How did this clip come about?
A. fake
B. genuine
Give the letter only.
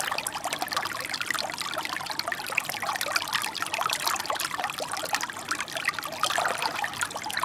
B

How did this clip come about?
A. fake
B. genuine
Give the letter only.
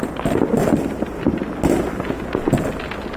B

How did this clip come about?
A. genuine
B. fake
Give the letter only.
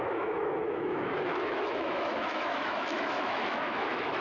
B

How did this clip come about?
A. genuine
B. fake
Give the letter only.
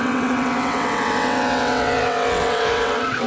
B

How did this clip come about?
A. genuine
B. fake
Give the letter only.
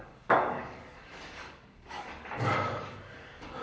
B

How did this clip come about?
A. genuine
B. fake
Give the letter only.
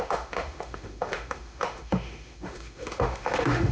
B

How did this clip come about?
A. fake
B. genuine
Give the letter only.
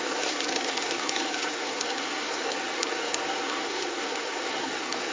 A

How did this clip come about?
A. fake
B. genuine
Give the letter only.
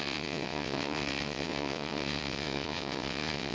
A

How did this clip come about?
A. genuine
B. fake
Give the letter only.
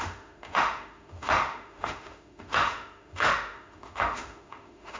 B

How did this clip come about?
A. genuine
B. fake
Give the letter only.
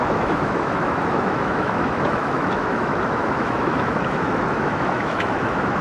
B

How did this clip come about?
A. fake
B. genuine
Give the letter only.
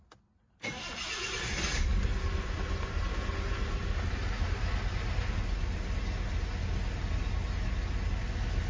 B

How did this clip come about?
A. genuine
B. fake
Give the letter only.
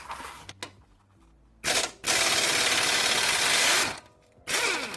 A